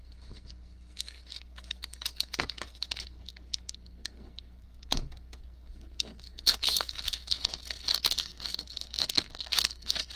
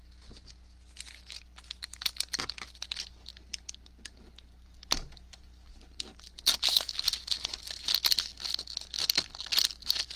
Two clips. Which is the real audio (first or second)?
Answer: second